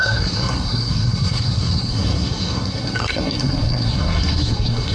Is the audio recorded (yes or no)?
no